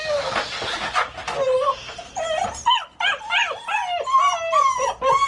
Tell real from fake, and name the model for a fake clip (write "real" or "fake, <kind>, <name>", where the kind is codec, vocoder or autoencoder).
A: real